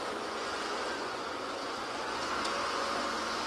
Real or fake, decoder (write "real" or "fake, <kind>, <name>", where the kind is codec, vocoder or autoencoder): fake, vocoder, Vocos